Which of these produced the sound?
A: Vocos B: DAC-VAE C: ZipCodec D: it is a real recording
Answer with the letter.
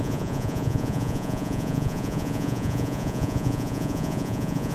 A